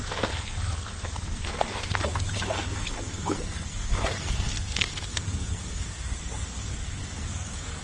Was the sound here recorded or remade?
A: remade